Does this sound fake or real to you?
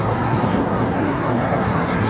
fake